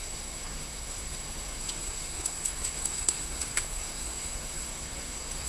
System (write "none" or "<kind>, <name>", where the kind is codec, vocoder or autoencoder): codec, SNAC